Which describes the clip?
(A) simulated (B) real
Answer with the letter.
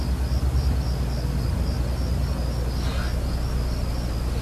B